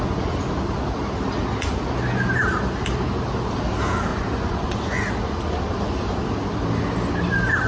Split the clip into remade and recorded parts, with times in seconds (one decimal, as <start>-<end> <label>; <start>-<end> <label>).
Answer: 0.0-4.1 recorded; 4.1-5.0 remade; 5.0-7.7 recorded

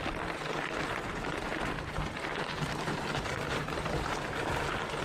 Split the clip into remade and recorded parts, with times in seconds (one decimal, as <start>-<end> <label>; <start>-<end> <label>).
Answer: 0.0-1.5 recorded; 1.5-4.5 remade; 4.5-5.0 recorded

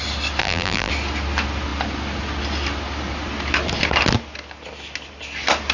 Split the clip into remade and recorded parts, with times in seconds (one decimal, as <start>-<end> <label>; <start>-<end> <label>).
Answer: 0.0-0.4 recorded; 0.4-0.9 remade; 0.9-5.7 recorded

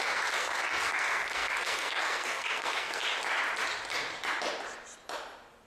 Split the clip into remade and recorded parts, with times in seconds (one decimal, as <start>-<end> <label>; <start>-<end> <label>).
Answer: 0.0-3.0 remade; 3.0-5.7 recorded